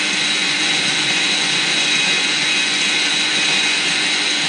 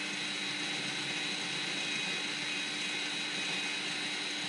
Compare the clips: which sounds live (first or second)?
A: second